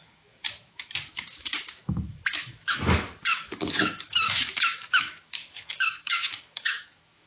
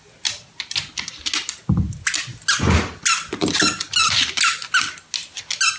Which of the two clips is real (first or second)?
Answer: second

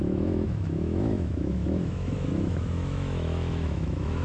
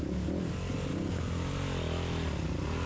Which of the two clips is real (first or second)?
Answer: second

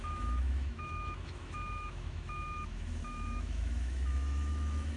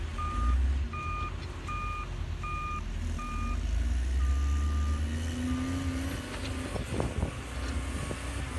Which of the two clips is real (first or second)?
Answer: second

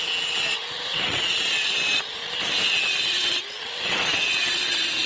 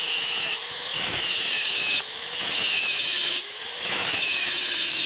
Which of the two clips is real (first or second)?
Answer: first